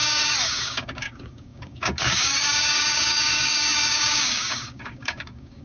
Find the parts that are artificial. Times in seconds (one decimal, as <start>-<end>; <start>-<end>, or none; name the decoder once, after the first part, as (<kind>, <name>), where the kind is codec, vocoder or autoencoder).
0.0-5.6 (codec, DAC)